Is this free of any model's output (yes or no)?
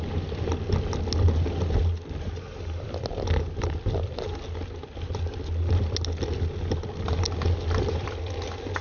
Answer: yes